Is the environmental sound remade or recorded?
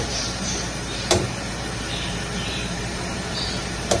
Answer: remade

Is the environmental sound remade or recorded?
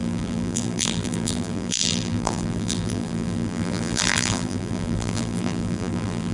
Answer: remade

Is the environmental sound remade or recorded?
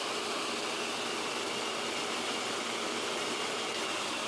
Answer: recorded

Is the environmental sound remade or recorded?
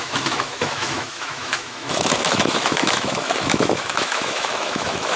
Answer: remade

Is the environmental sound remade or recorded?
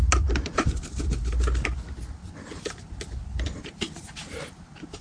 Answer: recorded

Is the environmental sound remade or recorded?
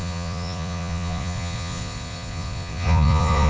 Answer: remade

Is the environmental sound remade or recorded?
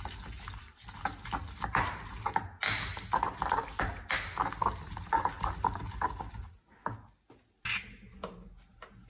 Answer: recorded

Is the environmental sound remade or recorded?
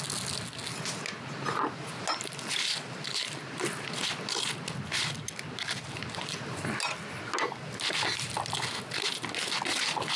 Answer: recorded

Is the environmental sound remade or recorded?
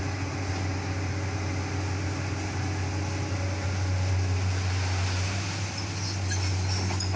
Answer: recorded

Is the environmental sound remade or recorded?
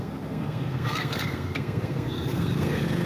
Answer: remade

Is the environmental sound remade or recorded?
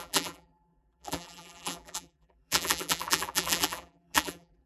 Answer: remade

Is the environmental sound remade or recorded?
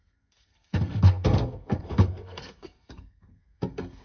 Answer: remade